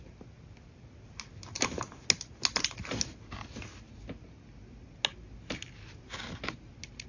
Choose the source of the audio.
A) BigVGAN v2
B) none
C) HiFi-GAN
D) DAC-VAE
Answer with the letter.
B